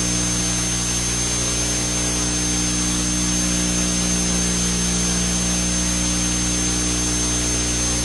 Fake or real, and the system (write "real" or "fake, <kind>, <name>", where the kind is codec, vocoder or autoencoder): real